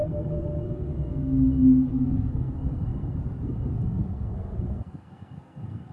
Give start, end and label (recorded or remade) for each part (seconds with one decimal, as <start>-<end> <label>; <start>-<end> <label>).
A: 0.0-5.9 remade